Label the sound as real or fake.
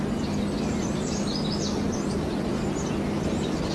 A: real